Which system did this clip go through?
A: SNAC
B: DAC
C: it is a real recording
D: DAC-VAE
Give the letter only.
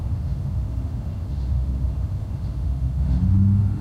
D